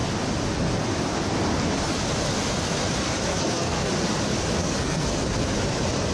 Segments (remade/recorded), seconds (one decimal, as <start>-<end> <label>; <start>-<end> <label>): 0.0-3.3 recorded; 3.3-3.9 remade; 3.9-4.6 recorded; 4.6-5.2 remade; 5.2-6.1 recorded